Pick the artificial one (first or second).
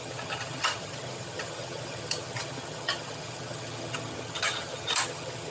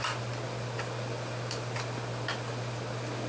first